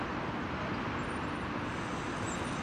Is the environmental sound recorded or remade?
recorded